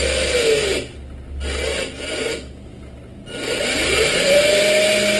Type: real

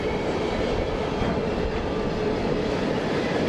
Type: real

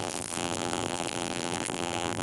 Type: fake